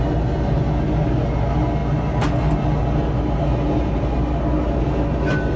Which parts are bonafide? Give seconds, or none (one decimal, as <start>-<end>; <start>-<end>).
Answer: 0.0-5.6